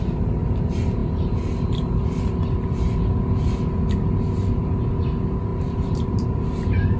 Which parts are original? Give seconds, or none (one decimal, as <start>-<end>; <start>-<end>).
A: 0.0-5.5; 6.4-7.0